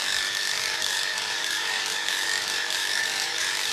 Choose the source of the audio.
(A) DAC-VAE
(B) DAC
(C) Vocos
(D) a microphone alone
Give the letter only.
B